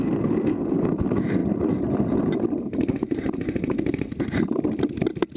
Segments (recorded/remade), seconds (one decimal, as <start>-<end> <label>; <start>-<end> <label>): 0.0-1.4 recorded; 1.4-4.6 remade; 4.6-5.4 recorded